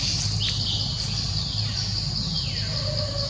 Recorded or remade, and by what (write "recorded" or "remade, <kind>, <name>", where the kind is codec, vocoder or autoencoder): recorded